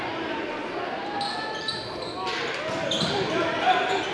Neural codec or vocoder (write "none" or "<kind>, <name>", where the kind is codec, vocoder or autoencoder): none